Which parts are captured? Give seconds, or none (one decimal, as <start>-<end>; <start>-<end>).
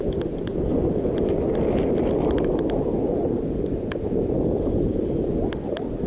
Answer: 0.0-6.1